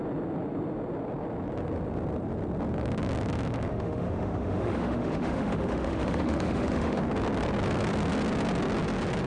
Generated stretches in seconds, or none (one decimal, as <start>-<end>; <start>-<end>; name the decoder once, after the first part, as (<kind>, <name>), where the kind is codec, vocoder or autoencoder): 3.7-7.0 (autoencoder, DAC-VAE)